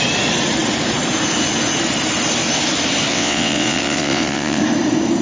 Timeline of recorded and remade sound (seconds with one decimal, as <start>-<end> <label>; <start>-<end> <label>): 0.0-3.1 recorded; 3.1-4.6 remade; 4.6-5.2 recorded